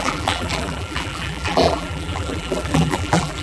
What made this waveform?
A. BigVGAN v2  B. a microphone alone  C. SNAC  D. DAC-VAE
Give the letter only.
A